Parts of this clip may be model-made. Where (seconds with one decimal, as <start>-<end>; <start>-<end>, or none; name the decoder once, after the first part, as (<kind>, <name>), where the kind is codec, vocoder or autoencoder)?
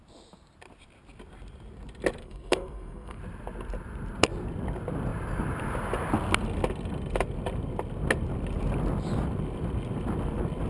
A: 2.2-3.2 (codec, SNAC)